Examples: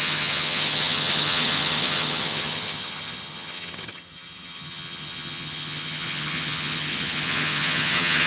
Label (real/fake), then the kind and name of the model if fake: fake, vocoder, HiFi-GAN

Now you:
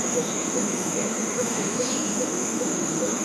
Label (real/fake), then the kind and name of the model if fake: fake, autoencoder, DAC-VAE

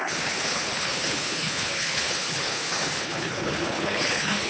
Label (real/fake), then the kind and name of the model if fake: fake, codec, HILCodec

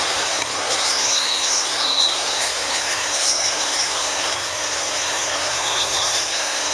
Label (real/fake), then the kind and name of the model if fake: fake, codec, SNAC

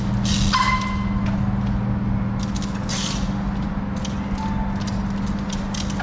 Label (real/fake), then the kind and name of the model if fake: real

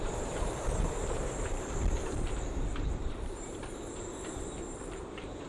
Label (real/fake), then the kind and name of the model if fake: fake, vocoder, BigVGAN v2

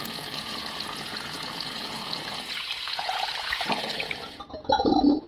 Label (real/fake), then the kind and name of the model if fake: fake, vocoder, Vocos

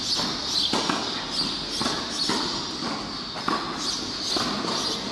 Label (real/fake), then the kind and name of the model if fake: real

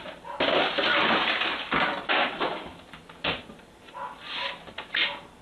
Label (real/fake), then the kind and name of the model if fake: real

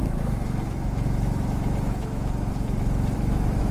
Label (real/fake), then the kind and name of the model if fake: fake, autoencoder, DAC-VAE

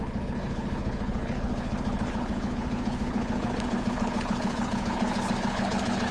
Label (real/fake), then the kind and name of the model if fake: fake, codec, HILCodec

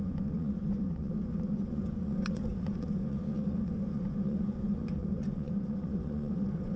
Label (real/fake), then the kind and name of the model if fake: fake, vocoder, Vocos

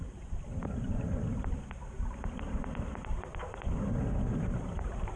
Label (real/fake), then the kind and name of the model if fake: real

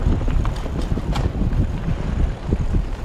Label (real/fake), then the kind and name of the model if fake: fake, vocoder, BigVGAN v2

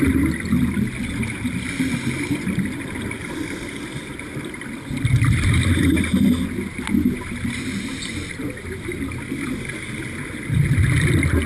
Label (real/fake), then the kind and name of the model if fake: real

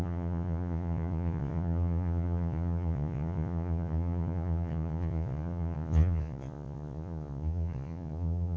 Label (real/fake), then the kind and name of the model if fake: fake, vocoder, Vocos